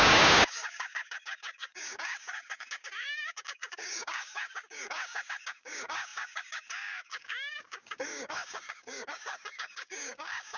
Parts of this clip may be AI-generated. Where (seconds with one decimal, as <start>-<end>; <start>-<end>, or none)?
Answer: 0.0-10.6